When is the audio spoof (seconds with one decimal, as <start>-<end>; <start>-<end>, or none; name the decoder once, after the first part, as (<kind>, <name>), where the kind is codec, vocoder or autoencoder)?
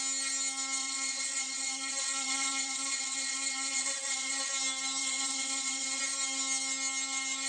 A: 0.8-4.5 (vocoder, WaveNeXt); 5.0-6.0